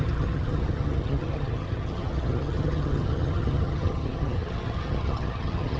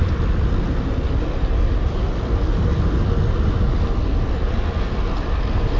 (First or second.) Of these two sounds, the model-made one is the first